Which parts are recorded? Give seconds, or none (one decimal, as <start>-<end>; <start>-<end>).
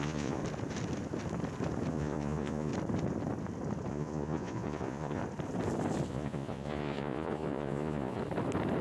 0.4-1.9; 2.7-3.9; 5.2-6.1; 8.2-8.8